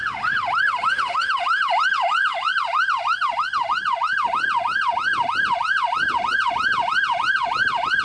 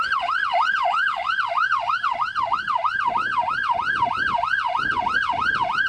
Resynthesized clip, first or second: second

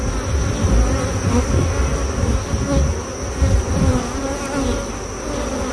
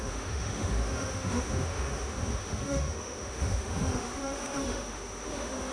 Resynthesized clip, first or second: second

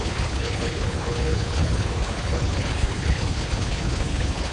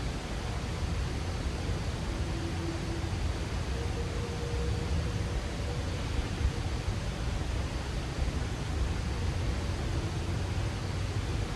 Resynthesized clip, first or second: first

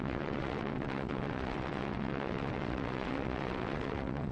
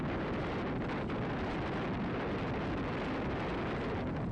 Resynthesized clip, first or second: first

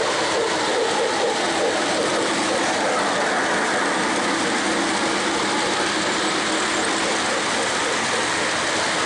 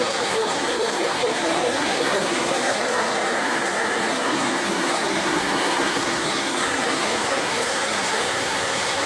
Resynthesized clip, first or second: second